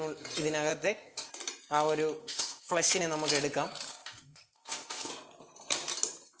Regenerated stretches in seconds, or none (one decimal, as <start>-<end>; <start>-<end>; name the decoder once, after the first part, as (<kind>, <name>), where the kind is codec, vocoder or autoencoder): 0.7-1.3 (codec, ZipCodec); 2.2-3.0; 3.9-5.1